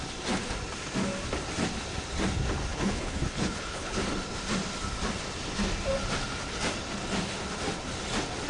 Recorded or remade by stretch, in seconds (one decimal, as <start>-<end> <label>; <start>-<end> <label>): 0.0-2.7 recorded; 2.7-4.0 remade; 4.0-8.5 recorded